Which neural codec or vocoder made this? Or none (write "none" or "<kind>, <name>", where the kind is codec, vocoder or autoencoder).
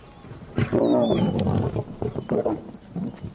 none